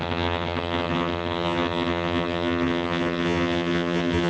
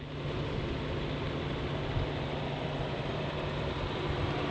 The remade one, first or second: first